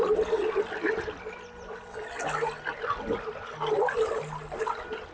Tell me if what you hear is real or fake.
real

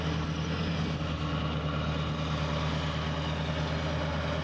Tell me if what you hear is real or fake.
real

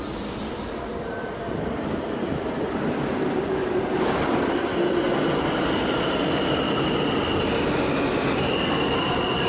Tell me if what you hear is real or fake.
real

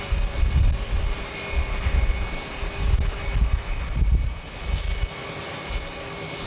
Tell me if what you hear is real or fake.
real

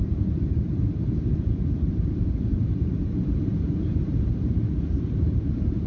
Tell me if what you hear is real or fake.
fake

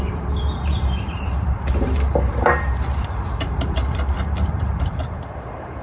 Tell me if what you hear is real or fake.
fake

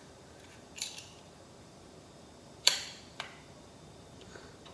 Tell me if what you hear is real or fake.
fake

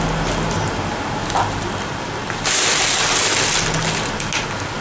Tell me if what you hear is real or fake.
real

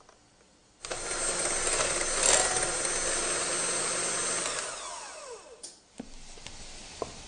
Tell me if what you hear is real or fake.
real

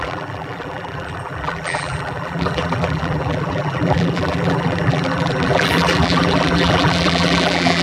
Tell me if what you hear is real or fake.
fake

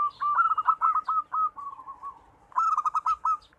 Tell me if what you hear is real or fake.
real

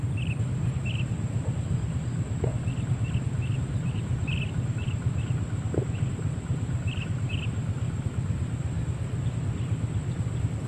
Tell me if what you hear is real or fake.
real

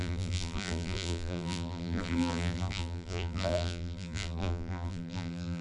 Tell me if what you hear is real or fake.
fake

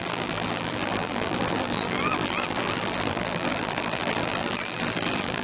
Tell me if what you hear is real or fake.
fake